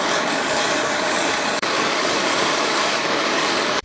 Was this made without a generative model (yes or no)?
no